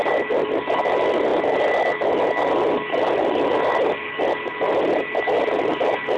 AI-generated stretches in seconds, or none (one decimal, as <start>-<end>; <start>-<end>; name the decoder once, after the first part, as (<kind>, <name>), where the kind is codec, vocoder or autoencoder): none